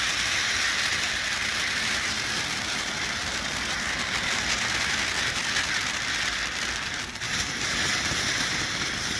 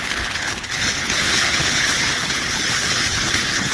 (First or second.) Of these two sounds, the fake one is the second